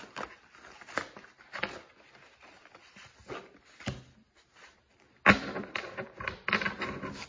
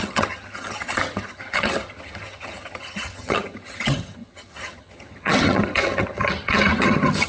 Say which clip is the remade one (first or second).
second